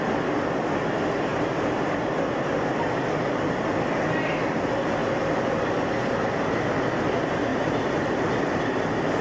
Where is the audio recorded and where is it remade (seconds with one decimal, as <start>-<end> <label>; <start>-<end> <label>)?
0.0-1.3 recorded; 1.3-2.1 remade; 2.1-5.0 recorded; 5.0-6.7 remade; 6.7-7.5 recorded; 7.5-8.1 remade; 8.1-9.2 recorded